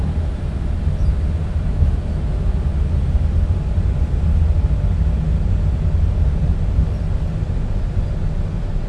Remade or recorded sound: recorded